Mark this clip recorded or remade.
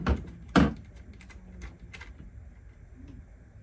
recorded